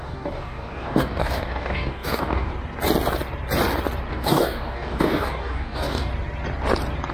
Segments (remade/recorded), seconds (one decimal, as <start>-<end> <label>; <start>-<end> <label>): 0.0-2.5 remade; 2.5-4.1 recorded; 4.1-6.1 remade; 6.1-7.1 recorded